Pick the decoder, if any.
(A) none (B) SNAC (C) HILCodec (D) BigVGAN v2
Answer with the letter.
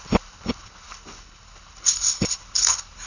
C